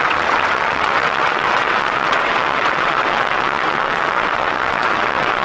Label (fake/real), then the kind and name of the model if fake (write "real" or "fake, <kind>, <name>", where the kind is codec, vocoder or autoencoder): fake, vocoder, WaveNeXt